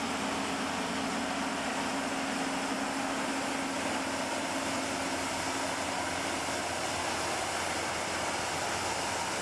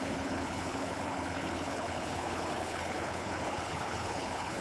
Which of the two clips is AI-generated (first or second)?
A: second